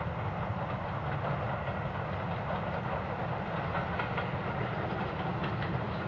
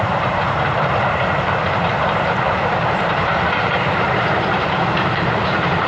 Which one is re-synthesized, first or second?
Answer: second